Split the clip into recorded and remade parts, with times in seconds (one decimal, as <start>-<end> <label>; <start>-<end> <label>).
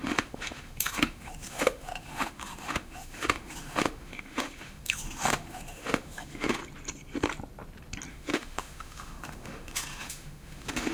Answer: 0.0-6.6 remade; 6.6-8.1 recorded; 8.1-10.9 remade